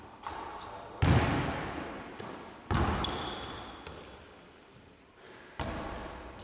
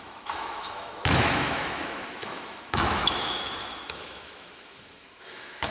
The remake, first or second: second